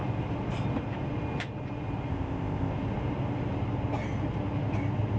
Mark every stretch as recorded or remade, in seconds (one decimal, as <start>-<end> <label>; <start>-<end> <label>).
0.0-2.1 recorded; 2.1-2.7 remade; 2.7-5.2 recorded